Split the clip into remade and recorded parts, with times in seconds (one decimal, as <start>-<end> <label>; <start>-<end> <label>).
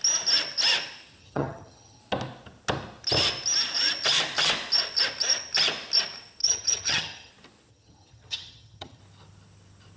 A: 0.0-1.2 recorded; 1.2-2.0 remade; 2.0-6.4 recorded; 6.4-7.3 remade; 7.3-7.7 recorded; 7.7-9.0 remade; 9.0-10.0 recorded